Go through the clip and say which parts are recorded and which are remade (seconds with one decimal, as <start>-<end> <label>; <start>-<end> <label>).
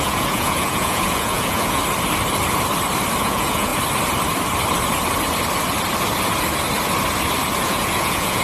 0.0-1.8 remade; 1.8-3.2 recorded; 3.2-3.7 remade; 3.7-7.6 recorded; 7.6-8.4 remade